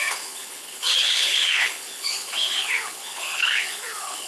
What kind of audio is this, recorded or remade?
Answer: remade